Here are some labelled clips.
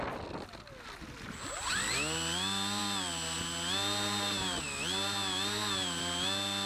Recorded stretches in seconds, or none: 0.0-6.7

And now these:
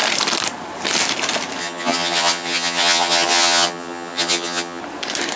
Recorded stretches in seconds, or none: 0.0-1.6; 4.8-5.4

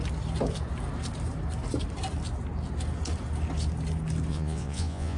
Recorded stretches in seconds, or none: 0.0-4.3

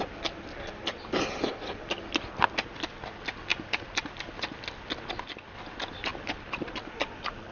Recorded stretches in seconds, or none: 0.0-7.5

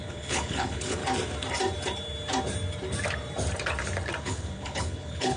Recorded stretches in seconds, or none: 1.0-4.2

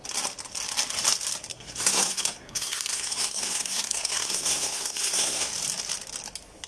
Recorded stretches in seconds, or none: 0.0-1.5; 5.5-6.7